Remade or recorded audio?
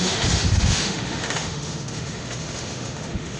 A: remade